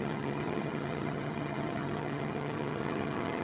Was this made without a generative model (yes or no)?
no